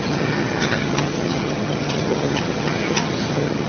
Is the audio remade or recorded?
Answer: remade